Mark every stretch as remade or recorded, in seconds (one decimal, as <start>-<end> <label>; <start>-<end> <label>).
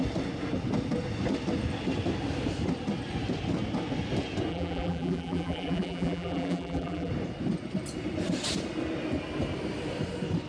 0.0-4.5 recorded; 4.5-7.1 remade; 7.1-10.5 recorded